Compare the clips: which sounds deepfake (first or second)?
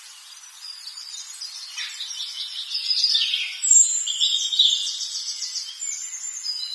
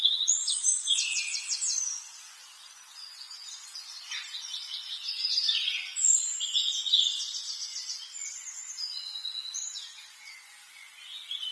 second